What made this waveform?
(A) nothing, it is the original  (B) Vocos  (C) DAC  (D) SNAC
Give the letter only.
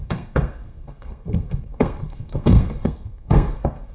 D